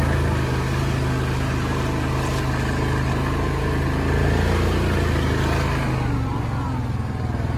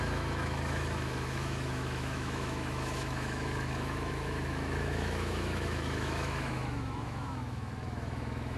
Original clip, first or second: first